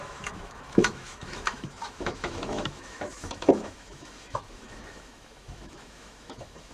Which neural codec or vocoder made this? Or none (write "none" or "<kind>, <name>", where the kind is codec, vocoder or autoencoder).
autoencoder, DAC-VAE